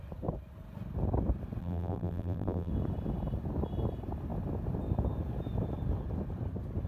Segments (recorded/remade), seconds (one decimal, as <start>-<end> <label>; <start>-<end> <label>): 0.0-1.6 recorded; 1.6-2.7 remade; 2.7-6.9 recorded